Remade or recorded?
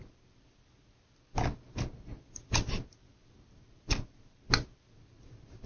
recorded